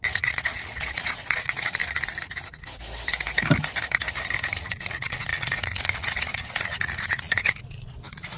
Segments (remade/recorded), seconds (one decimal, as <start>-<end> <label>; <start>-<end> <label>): 0.0-1.8 remade; 1.8-4.6 recorded; 4.6-8.4 remade